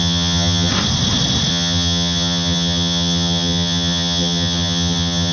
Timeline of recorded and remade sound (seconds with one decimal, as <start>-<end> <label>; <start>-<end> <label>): 0.0-0.7 remade; 0.7-1.5 recorded; 1.5-5.3 remade